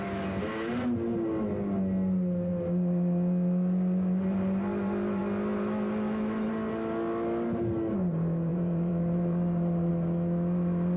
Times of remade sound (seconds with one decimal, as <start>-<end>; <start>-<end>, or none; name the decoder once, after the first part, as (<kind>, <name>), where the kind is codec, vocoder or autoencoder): 8.5-9.9 (vocoder, BigVGAN v2)